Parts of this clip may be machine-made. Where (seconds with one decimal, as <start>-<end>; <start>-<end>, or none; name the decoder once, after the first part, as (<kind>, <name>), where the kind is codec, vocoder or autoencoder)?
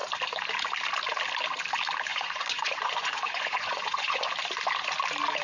2.1-4.3 (vocoder, Vocos)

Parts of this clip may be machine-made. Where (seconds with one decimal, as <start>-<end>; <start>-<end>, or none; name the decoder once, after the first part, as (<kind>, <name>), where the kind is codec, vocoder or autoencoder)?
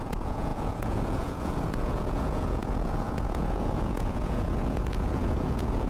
0.0-5.9 (vocoder, Vocos)